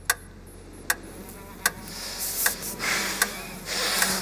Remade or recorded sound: recorded